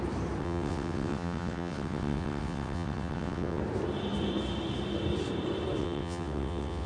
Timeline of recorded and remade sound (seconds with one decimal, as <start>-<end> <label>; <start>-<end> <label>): 0.0-0.4 recorded; 0.4-3.6 remade; 3.6-5.8 recorded; 5.8-6.9 remade